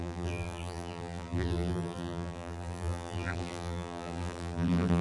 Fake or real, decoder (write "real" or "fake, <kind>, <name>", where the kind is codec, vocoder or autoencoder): fake, vocoder, BigVGAN v2